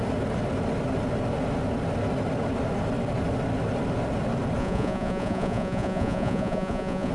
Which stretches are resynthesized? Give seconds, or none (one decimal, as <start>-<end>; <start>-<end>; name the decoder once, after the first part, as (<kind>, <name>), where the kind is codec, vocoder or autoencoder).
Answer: 4.6-7.1 (vocoder, Vocos)